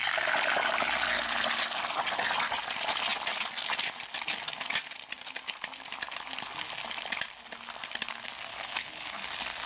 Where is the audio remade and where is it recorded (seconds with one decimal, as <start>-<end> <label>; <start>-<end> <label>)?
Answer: 0.0-8.5 recorded; 8.5-9.2 remade; 9.2-9.7 recorded

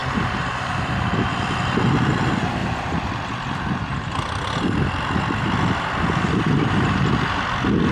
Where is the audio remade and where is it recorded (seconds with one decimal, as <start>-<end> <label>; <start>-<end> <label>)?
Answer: 0.0-7.9 recorded

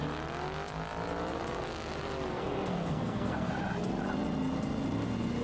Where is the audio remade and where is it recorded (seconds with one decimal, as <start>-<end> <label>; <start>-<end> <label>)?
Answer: 0.0-2.3 recorded; 2.3-3.5 remade; 3.5-5.4 recorded

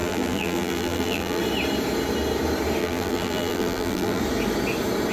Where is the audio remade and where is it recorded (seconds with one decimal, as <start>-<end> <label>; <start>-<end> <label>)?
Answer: 0.0-1.4 remade; 1.4-2.8 recorded; 2.8-4.2 remade; 4.2-5.1 recorded

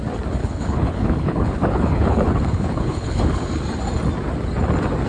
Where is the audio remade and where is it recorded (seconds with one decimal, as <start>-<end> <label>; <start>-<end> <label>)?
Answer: 0.0-0.4 recorded; 0.4-3.5 remade; 3.5-5.1 recorded

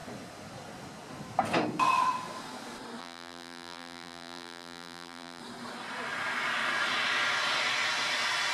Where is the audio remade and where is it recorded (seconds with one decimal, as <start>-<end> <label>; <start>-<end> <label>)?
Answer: 0.0-3.0 recorded; 3.0-5.4 remade; 5.4-8.5 recorded

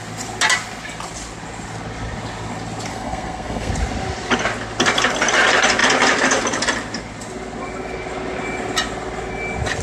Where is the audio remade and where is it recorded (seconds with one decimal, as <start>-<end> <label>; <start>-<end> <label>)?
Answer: 0.0-2.9 recorded; 2.9-3.7 remade; 3.7-9.8 recorded

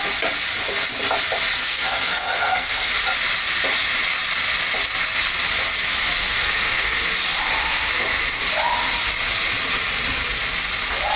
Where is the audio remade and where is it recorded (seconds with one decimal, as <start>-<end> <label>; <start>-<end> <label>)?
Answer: 0.0-1.6 recorded; 1.6-2.9 remade; 2.9-6.2 recorded; 6.2-7.1 remade; 7.1-11.2 recorded